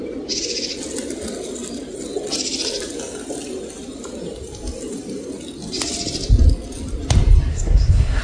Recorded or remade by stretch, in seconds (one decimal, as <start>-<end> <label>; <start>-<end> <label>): 0.0-7.5 recorded; 7.5-8.2 remade